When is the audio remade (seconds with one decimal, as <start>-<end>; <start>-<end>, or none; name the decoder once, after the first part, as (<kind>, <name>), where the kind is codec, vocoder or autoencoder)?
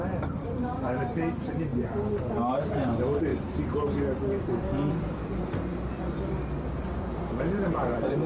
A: 0.0-1.7 (vocoder, BigVGAN v2); 2.6-8.3